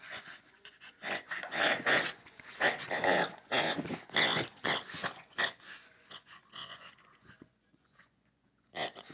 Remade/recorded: remade